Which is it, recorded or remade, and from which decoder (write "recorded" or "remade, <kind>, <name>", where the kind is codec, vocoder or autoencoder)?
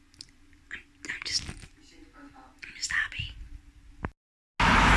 recorded